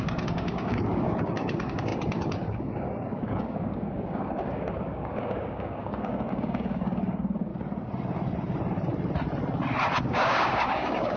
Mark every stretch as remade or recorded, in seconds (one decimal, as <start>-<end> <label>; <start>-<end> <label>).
0.0-7.5 remade; 7.5-10.0 recorded; 10.0-11.2 remade